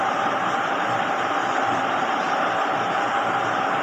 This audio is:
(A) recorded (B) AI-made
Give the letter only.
A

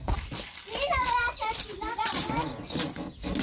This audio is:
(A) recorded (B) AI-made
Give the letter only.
A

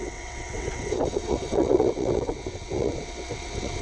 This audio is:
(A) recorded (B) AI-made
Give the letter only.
B